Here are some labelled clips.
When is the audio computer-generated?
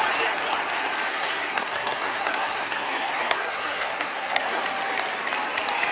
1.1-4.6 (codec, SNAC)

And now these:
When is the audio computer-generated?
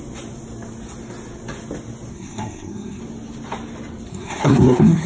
2.1-3.0 (codec, SNAC); 4.1-5.1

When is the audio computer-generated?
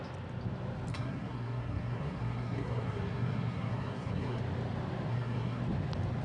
0.9-4.4 (codec, SNAC); 5.1-5.6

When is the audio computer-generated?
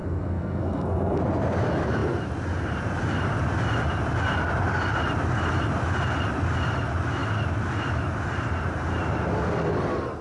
0.0-1.2 (codec, SNAC)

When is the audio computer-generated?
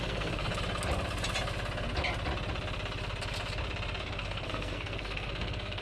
0.0-0.5 (codec, SNAC); 4.0-5.8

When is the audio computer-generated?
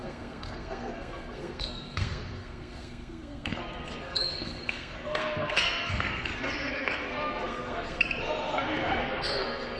0.0-9.8 (codec, SNAC)